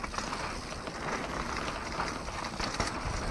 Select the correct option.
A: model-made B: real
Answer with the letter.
B